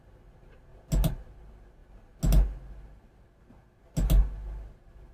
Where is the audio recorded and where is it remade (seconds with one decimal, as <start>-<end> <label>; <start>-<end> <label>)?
0.0-5.1 recorded